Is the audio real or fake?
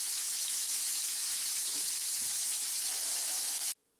fake